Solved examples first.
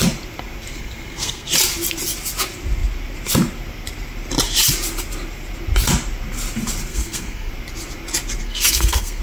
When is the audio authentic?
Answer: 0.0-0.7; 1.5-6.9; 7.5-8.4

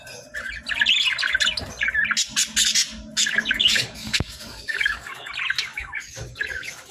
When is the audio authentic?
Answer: 0.0-3.2; 5.3-5.7

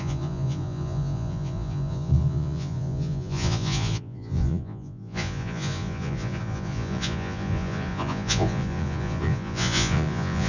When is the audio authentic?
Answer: none

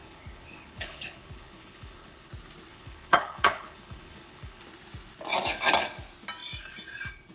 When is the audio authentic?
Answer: 2.3-2.7; 4.6-7.3

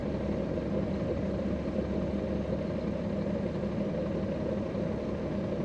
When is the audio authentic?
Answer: 0.0-5.6

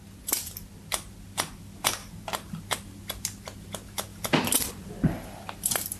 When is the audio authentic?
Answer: 0.0-2.0; 2.6-4.1; 4.9-6.0

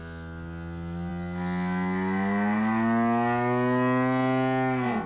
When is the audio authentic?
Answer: 0.0-5.1